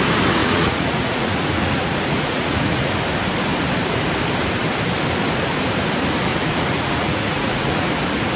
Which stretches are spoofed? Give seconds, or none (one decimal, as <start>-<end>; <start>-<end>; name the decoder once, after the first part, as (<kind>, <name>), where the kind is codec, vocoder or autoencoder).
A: 0.4-2.9 (vocoder, Vocos); 6.3-7.9